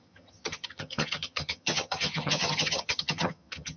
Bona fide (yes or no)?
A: no